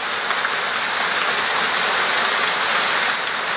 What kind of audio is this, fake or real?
real